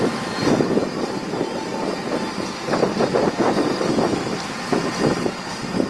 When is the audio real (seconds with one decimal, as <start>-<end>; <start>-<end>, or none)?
0.0-5.9